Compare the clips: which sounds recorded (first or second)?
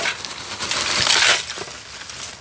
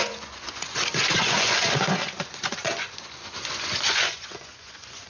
first